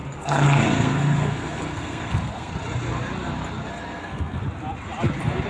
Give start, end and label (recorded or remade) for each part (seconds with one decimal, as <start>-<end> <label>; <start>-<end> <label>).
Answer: 0.0-2.5 remade; 2.5-3.7 recorded; 3.7-4.4 remade; 4.4-5.5 recorded